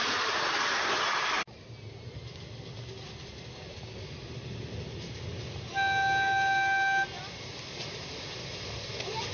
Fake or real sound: real